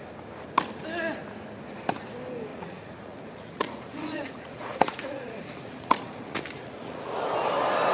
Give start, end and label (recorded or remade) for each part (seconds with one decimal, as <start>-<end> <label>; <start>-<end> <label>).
0.0-2.5 recorded; 2.5-7.2 remade; 7.2-7.9 recorded